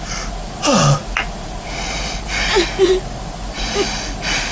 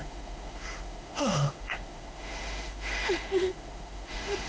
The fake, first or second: second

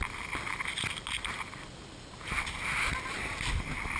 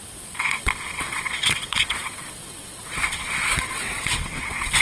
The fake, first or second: second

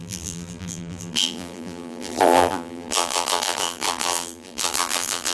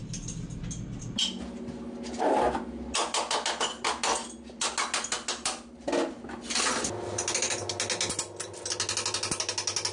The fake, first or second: first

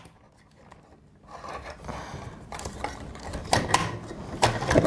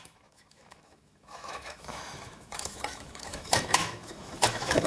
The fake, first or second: second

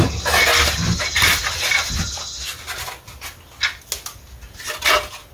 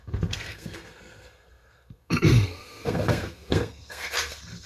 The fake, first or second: second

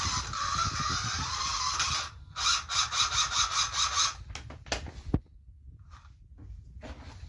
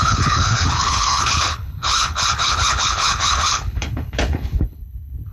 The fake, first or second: second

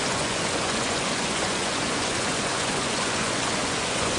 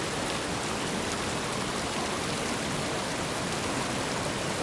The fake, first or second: first